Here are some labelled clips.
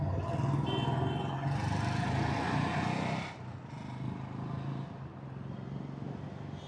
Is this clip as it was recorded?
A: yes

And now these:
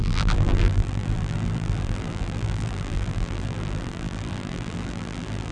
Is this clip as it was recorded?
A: no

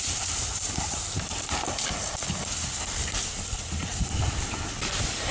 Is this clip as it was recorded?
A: no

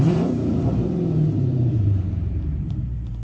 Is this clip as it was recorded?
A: no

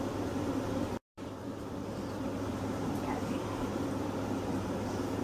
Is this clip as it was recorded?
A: no